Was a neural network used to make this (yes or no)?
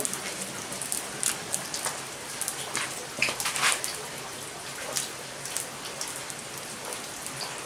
no